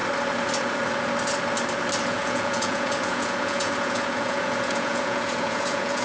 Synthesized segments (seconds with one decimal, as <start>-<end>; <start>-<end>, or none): 2.0-6.0